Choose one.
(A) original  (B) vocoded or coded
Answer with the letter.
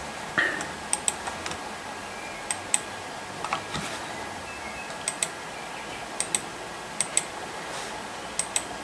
A